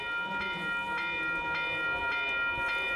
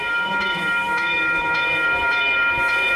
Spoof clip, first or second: second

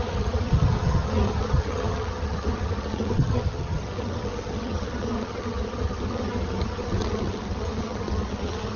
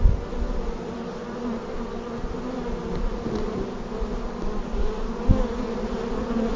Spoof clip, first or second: first